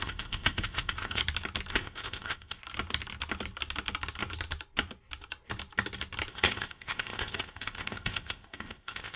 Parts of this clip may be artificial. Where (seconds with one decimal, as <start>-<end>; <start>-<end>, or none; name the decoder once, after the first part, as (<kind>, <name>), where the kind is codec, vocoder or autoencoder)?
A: 0.0-1.2 (codec, ZipCodec); 1.7-2.6; 6.3-9.2

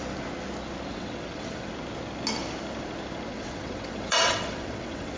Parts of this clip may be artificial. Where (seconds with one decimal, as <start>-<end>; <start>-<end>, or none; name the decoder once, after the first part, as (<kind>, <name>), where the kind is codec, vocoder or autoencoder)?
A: 0.9-1.7 (vocoder, WaveNeXt); 3.3-5.2

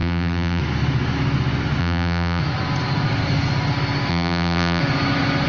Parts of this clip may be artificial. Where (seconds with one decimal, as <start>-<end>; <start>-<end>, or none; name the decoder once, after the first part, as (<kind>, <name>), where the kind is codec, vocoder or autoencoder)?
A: 0.0-0.6 (vocoder, BigVGAN v2); 1.8-2.4; 4.1-4.8

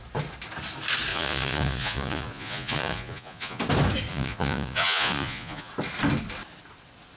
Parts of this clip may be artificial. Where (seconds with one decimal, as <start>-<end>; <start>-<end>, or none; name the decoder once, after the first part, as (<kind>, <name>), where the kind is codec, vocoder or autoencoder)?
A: 1.1-3.6 (vocoder, Vocos); 4.1-5.7

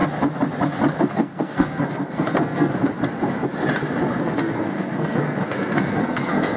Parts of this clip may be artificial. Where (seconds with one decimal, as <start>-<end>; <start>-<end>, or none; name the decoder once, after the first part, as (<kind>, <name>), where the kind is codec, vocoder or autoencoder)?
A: 1.0-2.7 (codec, SNAC); 4.2-6.6